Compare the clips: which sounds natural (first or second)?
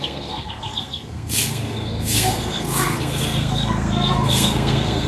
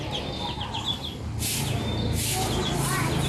second